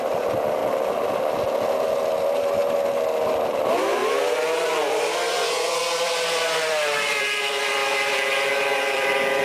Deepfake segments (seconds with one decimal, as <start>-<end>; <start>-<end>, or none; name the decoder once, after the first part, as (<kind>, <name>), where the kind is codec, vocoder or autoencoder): 0.0-0.6 (vocoder, BigVGAN v2); 2.2-2.6; 3.2-7.8; 8.8-9.4